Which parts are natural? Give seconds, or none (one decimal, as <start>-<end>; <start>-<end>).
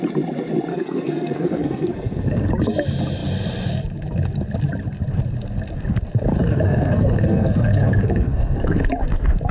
0.0-0.7; 2.5-6.3; 8.9-9.5